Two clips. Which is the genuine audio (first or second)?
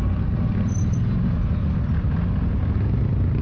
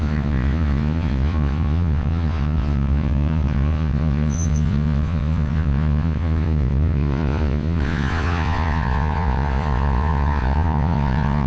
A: first